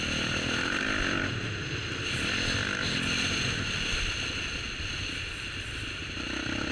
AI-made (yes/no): no